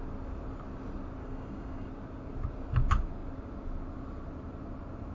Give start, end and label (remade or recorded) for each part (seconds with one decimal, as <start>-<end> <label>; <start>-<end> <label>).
0.0-1.2 recorded; 1.2-1.9 remade; 1.9-5.1 recorded